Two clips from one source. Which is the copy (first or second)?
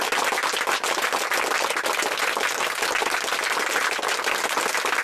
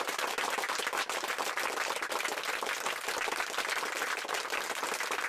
second